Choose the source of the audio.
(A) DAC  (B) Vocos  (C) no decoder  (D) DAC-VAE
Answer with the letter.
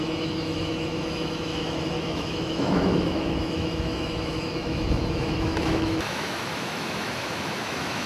D